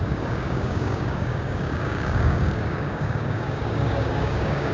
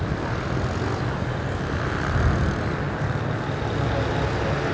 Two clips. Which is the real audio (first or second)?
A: second